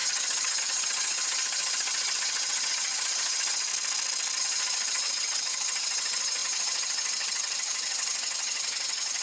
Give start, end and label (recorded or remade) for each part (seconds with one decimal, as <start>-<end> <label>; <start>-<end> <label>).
0.0-3.7 remade; 3.7-4.4 recorded; 4.4-9.2 remade